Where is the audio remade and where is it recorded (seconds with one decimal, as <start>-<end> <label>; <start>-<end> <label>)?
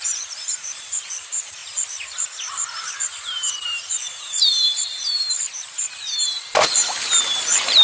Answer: 0.0-7.8 remade